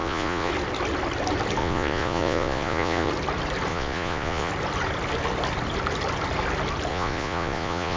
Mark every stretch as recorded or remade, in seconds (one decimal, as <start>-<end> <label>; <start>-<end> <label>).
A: 0.0-0.5 remade; 0.5-1.6 recorded; 1.6-3.1 remade; 3.1-3.7 recorded; 3.7-4.5 remade; 4.5-6.9 recorded; 6.9-8.0 remade